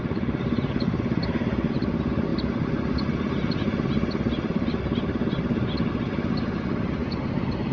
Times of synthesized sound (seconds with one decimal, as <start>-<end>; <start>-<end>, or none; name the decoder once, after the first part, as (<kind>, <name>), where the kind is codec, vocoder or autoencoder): 7.0-7.7 (vocoder, BigVGAN v2)